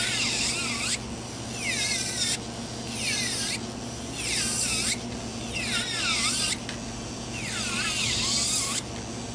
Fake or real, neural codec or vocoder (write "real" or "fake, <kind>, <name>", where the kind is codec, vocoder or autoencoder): real